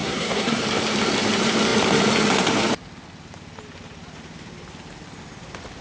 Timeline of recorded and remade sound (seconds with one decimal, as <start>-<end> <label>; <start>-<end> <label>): 0.0-0.6 remade; 0.6-5.8 recorded